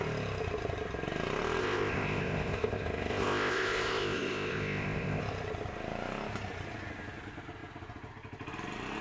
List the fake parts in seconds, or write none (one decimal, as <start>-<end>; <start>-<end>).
1.6-5.2